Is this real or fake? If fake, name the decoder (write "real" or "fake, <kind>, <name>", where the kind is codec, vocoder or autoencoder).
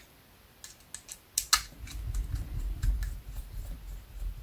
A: real